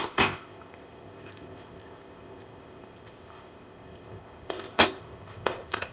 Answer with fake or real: fake